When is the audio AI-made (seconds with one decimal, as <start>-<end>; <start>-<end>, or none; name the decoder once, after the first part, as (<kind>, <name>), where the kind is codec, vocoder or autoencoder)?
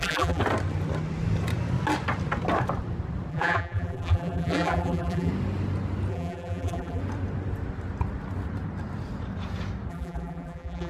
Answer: 0.0-0.4 (vocoder, BigVGAN v2); 3.3-5.3; 6.1-7.0; 9.9-10.9